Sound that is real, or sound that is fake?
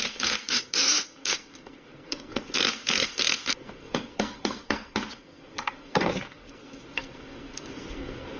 fake